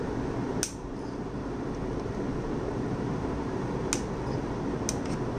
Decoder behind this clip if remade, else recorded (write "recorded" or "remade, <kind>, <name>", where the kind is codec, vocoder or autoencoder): recorded